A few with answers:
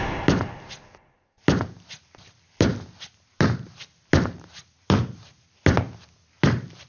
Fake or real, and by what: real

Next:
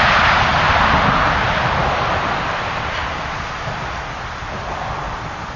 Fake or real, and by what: real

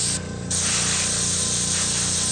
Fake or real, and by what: real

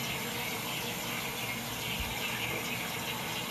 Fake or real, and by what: real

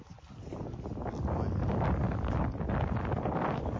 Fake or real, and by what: real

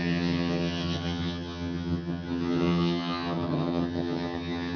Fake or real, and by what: fake, vocoder, HiFi-GAN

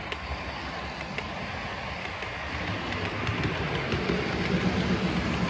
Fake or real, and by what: real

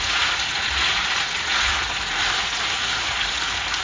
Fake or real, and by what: fake, vocoder, Vocos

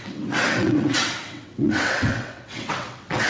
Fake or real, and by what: fake, vocoder, WaveNeXt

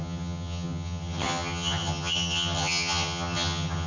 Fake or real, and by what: fake, vocoder, HiFi-GAN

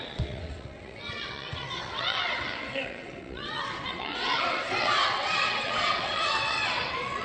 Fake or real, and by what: fake, vocoder, WaveNeXt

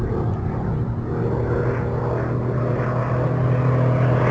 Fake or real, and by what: real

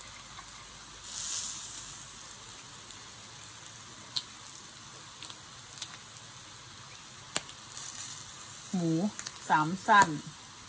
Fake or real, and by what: real